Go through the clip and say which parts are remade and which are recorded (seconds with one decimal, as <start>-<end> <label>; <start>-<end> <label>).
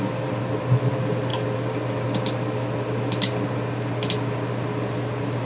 0.0-5.4 recorded